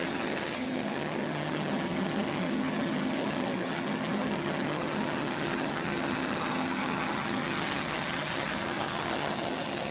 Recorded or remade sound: remade